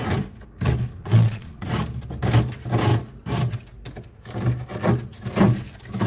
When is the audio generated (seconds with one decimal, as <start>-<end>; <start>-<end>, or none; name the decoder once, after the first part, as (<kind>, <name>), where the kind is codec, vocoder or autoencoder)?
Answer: 1.0-1.7 (vocoder, Vocos)